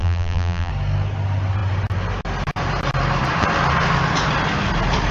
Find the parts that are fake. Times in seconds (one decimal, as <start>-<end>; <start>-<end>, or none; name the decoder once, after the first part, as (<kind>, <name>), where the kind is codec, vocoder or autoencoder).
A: 0.0-0.7 (vocoder, BigVGAN v2)